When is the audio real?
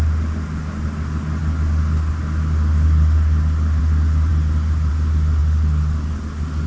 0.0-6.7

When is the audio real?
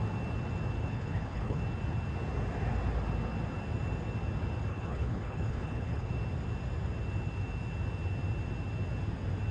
0.0-0.8; 1.6-4.7; 6.1-9.5